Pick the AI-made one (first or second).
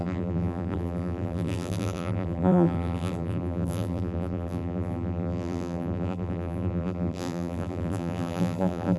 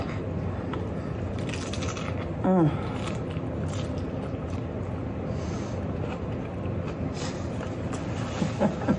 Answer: first